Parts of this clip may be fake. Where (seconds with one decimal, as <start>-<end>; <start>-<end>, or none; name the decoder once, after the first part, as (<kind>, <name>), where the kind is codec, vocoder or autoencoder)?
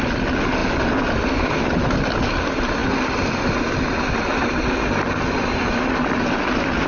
none